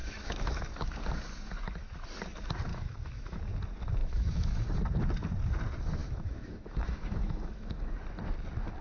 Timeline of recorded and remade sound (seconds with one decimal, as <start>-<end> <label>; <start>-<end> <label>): 0.0-0.9 remade; 0.9-2.7 recorded; 2.7-3.4 remade; 3.4-4.0 recorded; 4.0-4.7 remade; 4.7-6.0 recorded; 6.0-7.9 remade; 7.9-8.8 recorded